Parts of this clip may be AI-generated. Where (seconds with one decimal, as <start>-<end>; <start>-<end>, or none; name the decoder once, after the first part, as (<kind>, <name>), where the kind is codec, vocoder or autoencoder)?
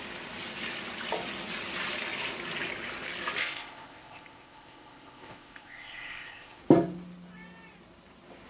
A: 3.4-6.6 (codec, ZipCodec)